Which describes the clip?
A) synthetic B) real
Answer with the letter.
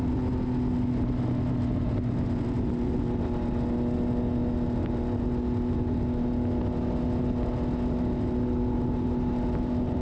B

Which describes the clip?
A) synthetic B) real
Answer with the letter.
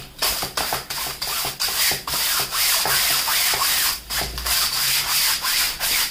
B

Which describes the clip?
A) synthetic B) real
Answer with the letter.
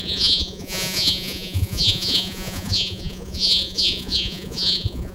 A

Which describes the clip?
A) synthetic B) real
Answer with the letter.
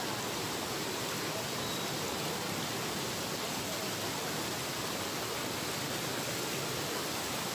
B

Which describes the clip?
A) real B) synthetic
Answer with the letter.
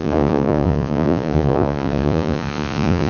B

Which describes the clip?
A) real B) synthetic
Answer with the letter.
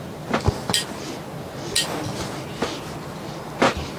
A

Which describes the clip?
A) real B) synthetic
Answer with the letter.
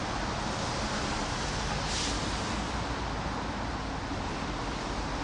A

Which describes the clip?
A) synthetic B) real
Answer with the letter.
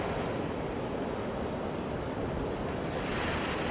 B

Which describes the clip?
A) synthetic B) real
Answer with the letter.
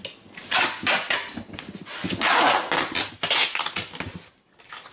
B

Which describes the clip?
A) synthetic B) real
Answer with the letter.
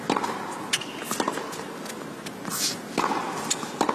B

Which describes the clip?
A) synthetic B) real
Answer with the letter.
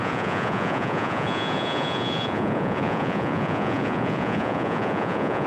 A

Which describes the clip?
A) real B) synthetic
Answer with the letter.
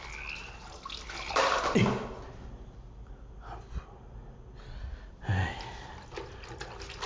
A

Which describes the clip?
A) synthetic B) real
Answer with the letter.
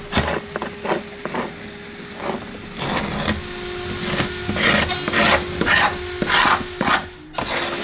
B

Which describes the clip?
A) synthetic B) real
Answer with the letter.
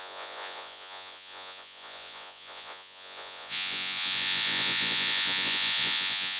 A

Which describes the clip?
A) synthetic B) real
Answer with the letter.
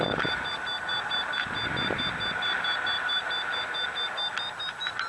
B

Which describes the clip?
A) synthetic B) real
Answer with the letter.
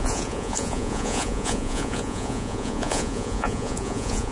A